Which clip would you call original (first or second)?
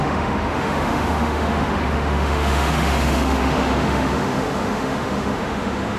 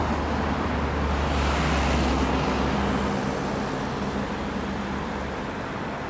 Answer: second